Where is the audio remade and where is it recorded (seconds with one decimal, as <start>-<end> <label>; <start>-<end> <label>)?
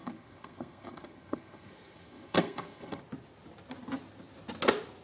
0.0-3.0 remade; 3.0-5.0 recorded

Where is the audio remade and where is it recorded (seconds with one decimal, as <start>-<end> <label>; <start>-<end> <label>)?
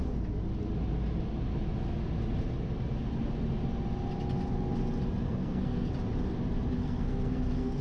0.0-5.2 recorded; 5.2-5.9 remade; 5.9-6.8 recorded; 6.8-7.8 remade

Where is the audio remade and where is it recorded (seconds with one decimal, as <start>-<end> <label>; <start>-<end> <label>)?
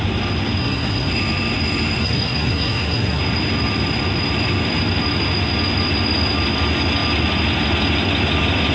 0.0-0.6 recorded; 0.6-1.1 remade; 1.1-2.0 recorded; 2.0-3.2 remade; 3.2-8.7 recorded